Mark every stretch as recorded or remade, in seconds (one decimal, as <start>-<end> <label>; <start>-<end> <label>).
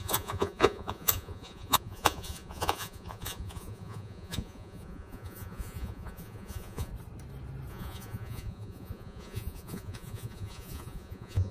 0.0-6.9 remade; 6.9-7.7 recorded; 7.7-11.5 remade